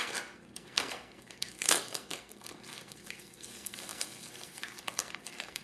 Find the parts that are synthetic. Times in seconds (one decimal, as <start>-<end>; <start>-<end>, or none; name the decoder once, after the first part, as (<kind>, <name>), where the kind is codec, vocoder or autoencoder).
0.0-5.6 (codec, SNAC)